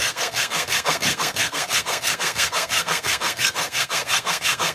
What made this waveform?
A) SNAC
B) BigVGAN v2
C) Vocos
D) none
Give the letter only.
A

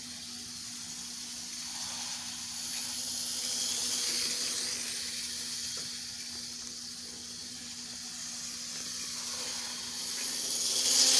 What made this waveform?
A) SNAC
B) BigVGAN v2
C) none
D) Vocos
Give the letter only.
C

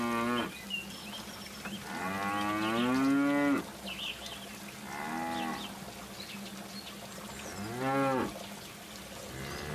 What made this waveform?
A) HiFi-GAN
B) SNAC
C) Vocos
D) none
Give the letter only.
D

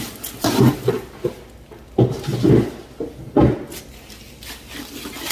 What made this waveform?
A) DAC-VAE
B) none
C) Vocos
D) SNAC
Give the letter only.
B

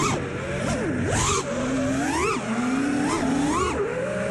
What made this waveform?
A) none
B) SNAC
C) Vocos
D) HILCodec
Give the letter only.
A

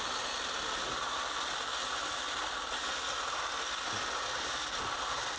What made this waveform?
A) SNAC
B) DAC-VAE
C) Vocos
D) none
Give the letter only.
D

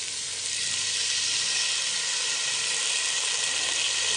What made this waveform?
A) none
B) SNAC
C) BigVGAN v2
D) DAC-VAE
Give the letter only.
A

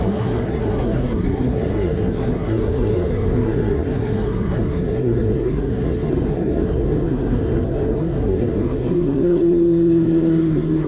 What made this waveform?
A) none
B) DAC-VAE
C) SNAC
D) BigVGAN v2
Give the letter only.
C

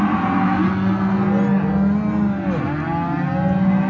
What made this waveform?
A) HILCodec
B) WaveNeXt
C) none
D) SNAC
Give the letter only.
C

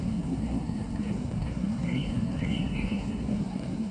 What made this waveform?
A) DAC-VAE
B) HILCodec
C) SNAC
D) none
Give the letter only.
C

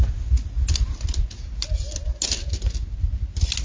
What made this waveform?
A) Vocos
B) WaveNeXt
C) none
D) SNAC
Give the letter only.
C